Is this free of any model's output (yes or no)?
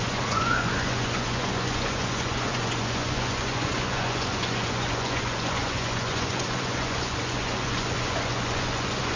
no